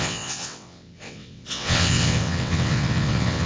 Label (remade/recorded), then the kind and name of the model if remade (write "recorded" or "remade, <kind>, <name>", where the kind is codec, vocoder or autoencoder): remade, vocoder, WaveNeXt